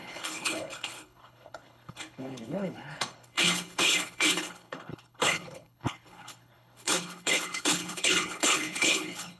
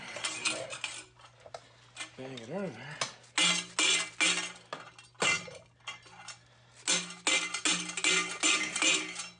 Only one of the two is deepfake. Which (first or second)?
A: first